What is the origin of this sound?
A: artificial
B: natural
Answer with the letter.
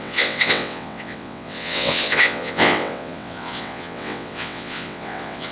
A